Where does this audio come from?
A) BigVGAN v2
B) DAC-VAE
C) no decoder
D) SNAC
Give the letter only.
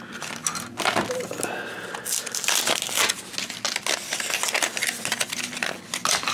C